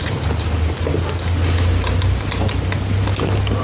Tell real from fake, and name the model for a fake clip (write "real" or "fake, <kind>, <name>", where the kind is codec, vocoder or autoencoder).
real